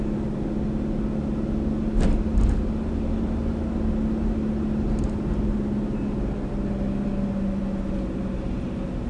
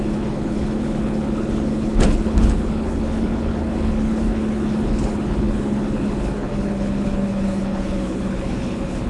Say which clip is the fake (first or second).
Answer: second